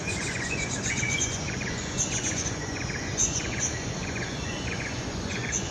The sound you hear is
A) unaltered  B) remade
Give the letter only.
B